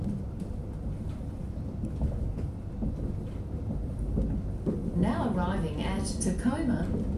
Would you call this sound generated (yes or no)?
no